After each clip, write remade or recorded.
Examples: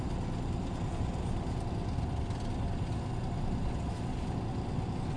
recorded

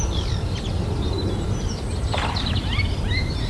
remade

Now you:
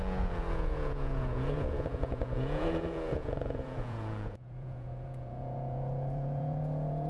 remade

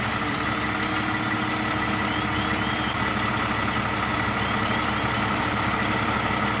recorded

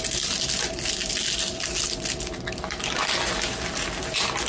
recorded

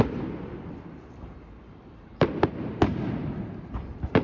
recorded